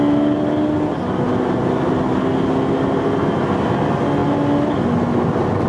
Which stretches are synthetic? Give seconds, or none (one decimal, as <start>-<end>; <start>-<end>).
none